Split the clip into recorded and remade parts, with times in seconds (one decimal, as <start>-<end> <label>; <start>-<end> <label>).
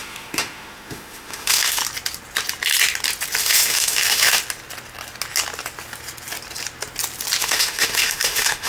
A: 0.0-1.8 remade; 1.8-3.4 recorded; 3.4-4.4 remade; 4.4-7.4 recorded; 7.4-8.7 remade